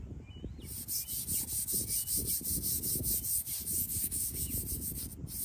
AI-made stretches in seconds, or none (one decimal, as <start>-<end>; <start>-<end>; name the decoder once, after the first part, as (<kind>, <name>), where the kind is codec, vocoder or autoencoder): 3.8-4.5 (codec, DAC)